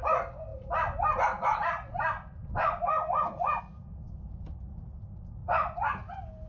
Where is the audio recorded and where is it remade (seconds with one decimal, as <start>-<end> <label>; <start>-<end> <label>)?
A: 0.0-6.5 recorded